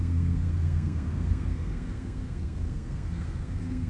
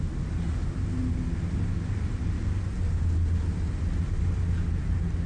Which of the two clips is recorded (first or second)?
second